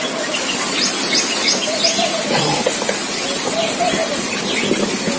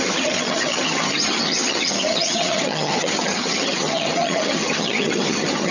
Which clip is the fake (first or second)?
second